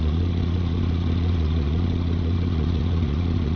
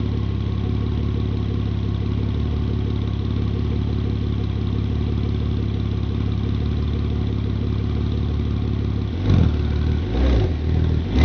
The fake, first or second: first